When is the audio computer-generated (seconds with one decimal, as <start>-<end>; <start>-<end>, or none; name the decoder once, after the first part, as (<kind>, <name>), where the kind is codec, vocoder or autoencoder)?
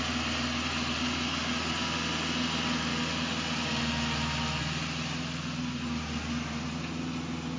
none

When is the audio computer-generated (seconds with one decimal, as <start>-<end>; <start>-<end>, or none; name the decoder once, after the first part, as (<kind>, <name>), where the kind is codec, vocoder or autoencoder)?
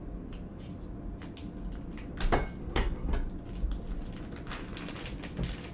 2.6-3.1 (codec, SNAC)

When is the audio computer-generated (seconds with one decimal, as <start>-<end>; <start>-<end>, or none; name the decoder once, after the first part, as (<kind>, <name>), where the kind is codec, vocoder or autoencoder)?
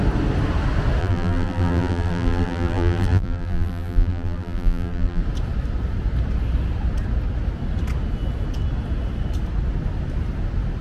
1.0-5.2 (vocoder, BigVGAN v2)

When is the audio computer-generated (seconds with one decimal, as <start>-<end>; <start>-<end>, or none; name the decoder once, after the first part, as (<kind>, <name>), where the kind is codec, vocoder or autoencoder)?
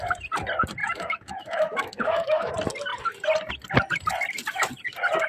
0.8-2.5 (autoencoder, DAC-VAE)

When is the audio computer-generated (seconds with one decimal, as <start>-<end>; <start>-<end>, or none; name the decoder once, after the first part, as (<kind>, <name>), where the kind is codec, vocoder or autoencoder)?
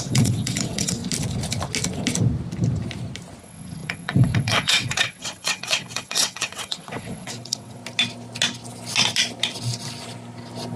0.0-1.0 (vocoder, WaveNeXt); 3.4-7.8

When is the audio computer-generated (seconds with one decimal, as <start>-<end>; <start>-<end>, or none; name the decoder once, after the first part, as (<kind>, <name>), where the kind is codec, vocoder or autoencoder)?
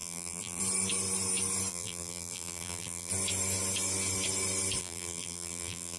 0.0-0.6 (vocoder, BigVGAN v2); 1.7-3.1; 4.8-6.0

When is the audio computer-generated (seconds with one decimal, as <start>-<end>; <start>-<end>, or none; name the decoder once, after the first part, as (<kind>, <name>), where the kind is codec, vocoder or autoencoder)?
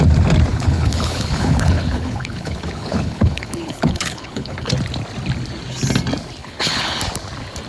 0.5-4.7 (codec, HILCodec); 6.4-7.0